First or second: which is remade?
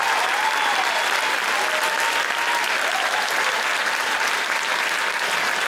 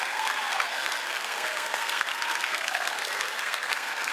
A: second